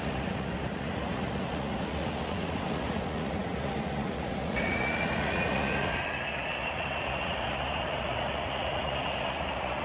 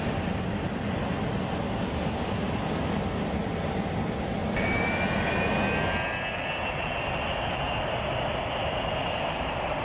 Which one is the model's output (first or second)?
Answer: first